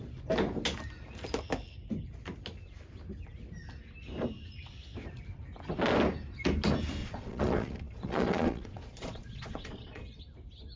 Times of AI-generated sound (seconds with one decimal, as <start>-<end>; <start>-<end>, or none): 7.0-10.2